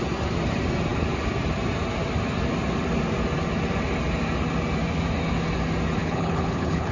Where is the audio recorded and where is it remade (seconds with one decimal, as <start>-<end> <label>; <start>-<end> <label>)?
0.0-6.0 recorded; 6.0-6.9 remade